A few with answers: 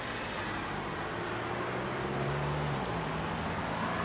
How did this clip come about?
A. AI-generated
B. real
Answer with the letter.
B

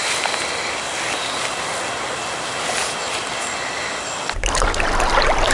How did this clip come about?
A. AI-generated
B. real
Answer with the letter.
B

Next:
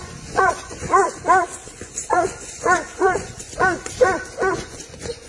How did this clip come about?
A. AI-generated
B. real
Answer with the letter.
A